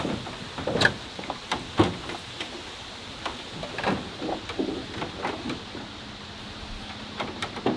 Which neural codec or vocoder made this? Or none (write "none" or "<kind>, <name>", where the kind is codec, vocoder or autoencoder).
none